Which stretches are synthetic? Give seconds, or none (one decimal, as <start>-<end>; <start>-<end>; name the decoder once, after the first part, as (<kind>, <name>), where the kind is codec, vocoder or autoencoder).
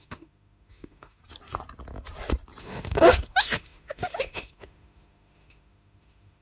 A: 0.0-1.2 (autoencoder, DAC-VAE); 2.6-6.4